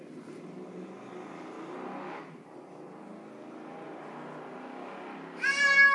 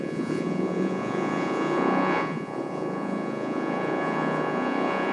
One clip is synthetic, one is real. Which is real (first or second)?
first